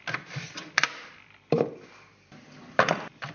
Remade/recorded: remade